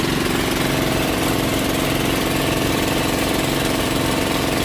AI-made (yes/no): no